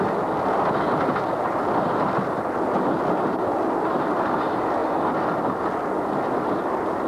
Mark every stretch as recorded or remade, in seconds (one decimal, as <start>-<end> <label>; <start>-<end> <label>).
0.0-7.1 recorded